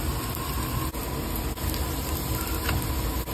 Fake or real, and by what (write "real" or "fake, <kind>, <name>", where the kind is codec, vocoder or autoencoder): real